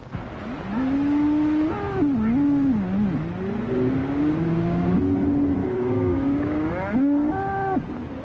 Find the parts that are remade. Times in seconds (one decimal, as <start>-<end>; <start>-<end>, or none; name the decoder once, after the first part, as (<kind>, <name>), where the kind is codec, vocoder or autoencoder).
4.0-5.0 (codec, DAC); 5.6-6.7